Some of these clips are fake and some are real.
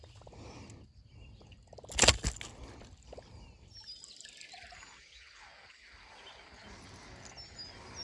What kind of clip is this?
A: real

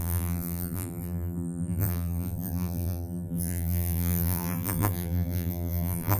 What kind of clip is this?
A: fake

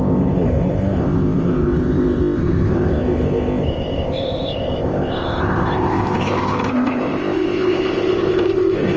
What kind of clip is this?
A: fake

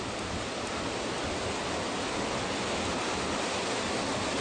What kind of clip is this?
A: real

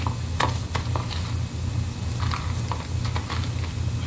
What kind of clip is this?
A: real